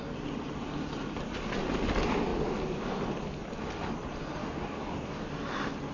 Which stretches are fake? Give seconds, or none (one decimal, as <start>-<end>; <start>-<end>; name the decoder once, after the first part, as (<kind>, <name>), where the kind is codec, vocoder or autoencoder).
4.4-5.3 (codec, DAC)